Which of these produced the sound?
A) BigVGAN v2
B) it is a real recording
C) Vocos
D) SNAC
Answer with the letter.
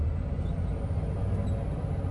B